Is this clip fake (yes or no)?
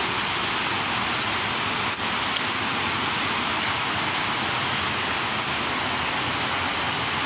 no